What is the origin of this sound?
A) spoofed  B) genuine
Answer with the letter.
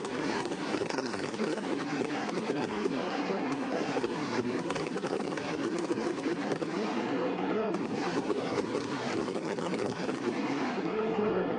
A